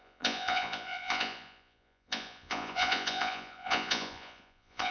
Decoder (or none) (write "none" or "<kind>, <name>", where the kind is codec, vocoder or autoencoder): vocoder, Vocos